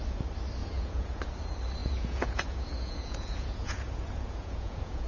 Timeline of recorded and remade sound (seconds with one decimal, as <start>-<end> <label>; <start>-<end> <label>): 0.0-0.6 recorded; 0.6-1.2 remade; 1.2-1.8 recorded; 1.8-5.1 remade